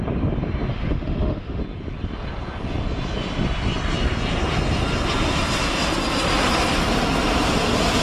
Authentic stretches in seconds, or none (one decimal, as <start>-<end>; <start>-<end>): 0.0-0.7; 1.6-8.0